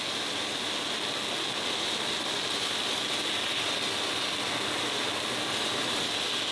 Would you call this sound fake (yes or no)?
no